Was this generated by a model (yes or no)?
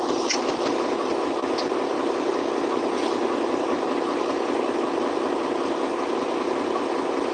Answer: no